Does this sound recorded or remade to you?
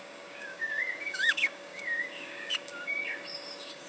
remade